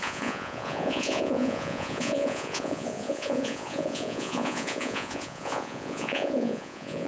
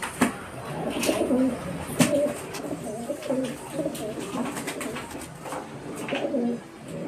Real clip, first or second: second